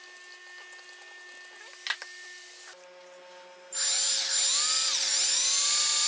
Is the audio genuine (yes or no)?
yes